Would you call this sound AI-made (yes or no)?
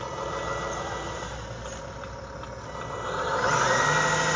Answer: no